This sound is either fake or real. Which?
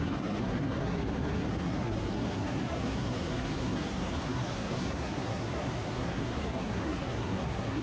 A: fake